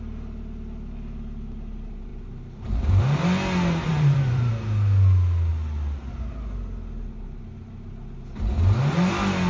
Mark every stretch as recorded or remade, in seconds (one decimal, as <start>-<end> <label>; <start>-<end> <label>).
0.0-2.1 recorded; 2.1-3.0 remade; 3.0-3.9 recorded; 3.9-4.5 remade; 4.5-9.5 recorded